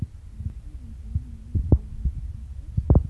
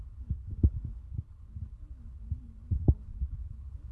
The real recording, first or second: first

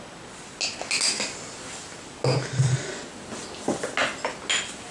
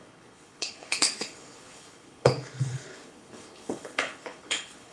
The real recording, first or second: first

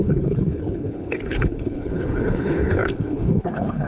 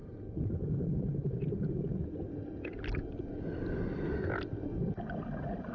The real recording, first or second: second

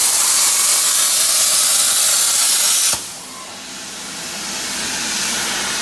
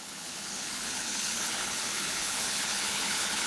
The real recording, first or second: first